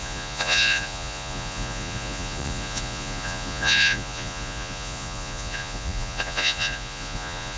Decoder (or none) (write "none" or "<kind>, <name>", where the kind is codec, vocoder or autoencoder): vocoder, Vocos